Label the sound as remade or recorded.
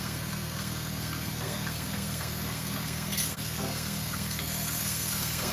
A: remade